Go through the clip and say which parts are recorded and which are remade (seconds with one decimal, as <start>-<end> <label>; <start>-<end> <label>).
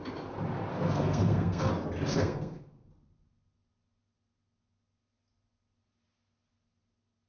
0.0-0.7 recorded; 0.7-1.7 remade; 1.7-2.1 recorded; 2.1-2.9 remade; 2.9-7.3 recorded